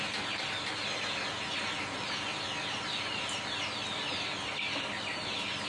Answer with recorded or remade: recorded